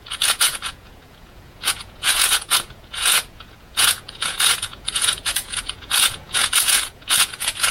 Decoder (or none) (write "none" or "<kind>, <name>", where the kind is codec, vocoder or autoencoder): vocoder, Vocos